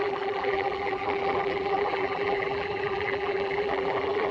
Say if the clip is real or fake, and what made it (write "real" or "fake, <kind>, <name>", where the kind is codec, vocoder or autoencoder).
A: fake, vocoder, BigVGAN v2